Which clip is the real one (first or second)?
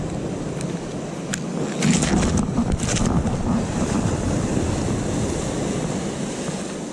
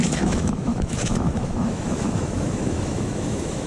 first